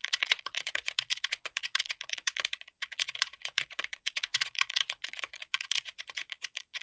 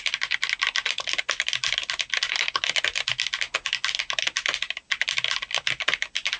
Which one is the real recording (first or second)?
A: second